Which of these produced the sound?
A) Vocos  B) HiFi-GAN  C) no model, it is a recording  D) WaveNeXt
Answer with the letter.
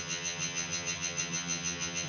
B